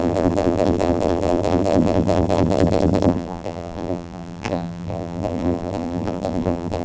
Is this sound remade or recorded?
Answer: remade